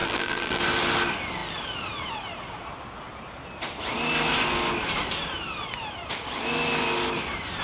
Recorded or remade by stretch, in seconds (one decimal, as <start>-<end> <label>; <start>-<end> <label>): 0.0-0.6 remade; 0.6-7.6 recorded